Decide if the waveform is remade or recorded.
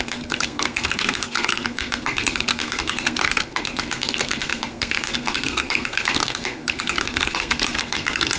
remade